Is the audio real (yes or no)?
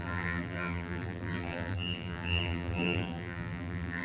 no